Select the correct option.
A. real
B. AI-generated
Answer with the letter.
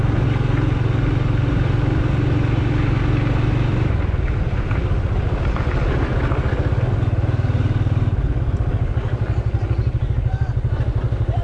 A